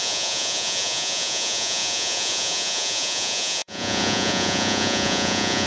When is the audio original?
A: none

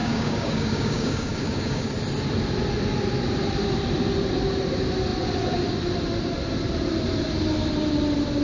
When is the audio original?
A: 1.9-8.4